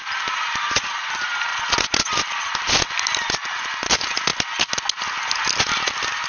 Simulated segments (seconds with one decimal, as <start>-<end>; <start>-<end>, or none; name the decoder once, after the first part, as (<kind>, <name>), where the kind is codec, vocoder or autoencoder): none